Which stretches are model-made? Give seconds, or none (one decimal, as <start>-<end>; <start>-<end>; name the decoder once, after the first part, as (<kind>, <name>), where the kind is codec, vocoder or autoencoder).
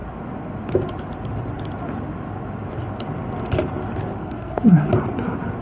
4.2-4.9 (codec, SNAC)